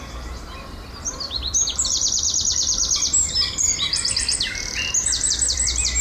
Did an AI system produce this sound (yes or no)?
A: yes